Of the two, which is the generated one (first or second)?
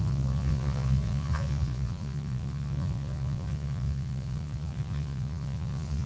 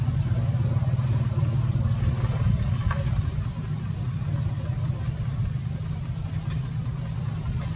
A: first